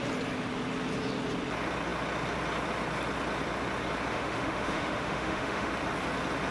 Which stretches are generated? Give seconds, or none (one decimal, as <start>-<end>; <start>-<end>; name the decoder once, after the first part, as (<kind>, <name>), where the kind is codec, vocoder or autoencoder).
4.1-5.7 (autoencoder, DAC-VAE)